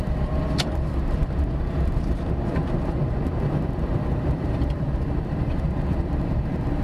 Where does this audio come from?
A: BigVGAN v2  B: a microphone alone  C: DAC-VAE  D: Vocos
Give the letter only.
A